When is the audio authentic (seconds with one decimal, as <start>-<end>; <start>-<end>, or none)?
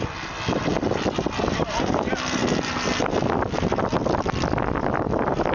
0.0-5.5